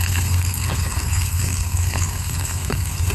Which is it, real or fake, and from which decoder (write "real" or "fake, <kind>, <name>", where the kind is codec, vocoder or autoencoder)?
fake, codec, SNAC